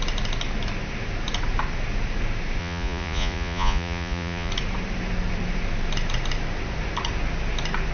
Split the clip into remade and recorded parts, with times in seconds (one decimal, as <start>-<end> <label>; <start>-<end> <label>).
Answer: 0.0-2.6 recorded; 2.6-4.5 remade; 4.5-7.9 recorded

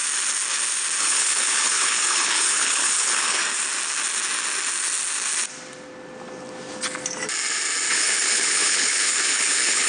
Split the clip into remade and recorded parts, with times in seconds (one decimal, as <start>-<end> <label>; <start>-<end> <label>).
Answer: 0.0-1.0 recorded; 1.0-3.4 remade; 3.4-7.9 recorded; 7.9-9.9 remade

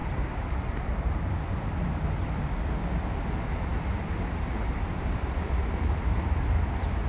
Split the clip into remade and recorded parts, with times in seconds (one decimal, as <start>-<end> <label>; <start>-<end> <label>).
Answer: 0.0-3.2 remade; 3.2-3.7 recorded; 3.7-7.1 remade

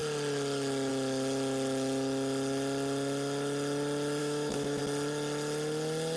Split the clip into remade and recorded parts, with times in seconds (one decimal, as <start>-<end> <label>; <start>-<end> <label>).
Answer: 0.0-4.2 recorded; 4.2-4.8 remade; 4.8-6.2 recorded

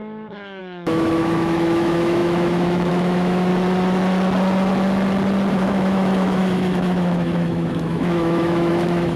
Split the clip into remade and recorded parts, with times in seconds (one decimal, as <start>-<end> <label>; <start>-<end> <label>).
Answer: 0.0-3.5 remade; 3.5-5.5 recorded; 5.5-9.2 remade

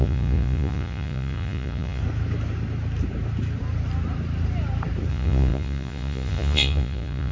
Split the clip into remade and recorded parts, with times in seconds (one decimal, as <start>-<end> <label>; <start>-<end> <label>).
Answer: 0.0-2.0 remade; 2.0-5.1 recorded; 5.1-7.3 remade

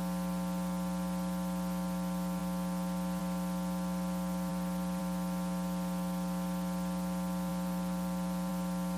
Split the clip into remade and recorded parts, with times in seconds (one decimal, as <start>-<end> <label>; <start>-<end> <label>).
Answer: 0.0-4.5 recorded; 4.5-5.0 remade; 5.0-7.5 recorded; 7.5-8.5 remade; 8.5-9.0 recorded

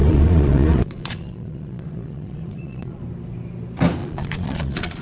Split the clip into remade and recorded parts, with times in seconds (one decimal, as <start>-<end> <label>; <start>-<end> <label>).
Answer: 0.0-3.0 remade; 3.0-4.0 recorded; 4.0-5.0 remade